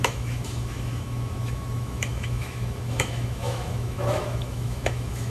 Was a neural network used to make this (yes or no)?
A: yes